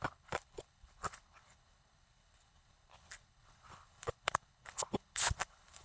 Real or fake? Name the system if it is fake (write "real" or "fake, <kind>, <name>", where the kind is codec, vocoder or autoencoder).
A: fake, codec, HILCodec